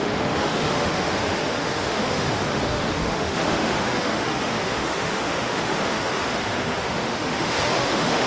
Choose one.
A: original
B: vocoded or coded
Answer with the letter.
B